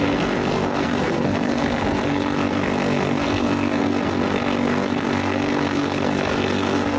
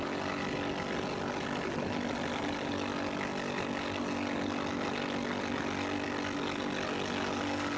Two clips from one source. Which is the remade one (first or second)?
first